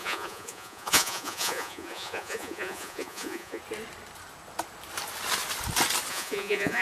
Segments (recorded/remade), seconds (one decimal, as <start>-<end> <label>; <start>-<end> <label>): 0.0-3.6 remade; 3.6-6.1 recorded; 6.1-6.8 remade